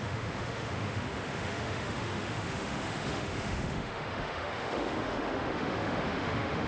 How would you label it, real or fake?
fake